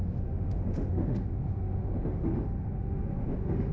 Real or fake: fake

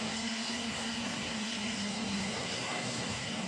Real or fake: fake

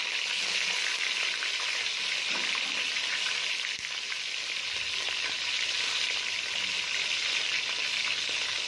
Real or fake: real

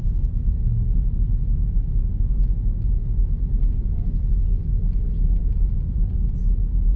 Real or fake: real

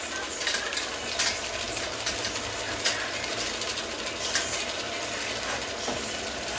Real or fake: real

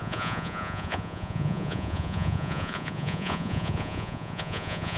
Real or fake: fake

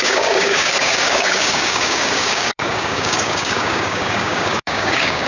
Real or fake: fake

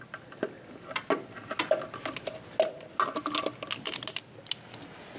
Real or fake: real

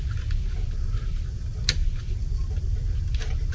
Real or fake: real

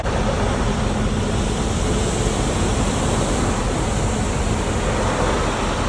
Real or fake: real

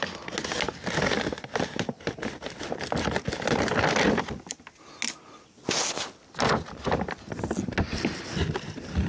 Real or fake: real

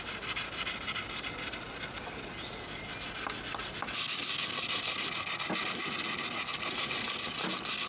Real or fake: real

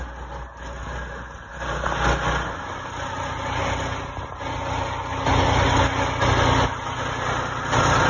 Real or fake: real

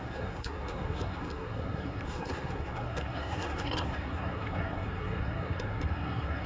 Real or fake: fake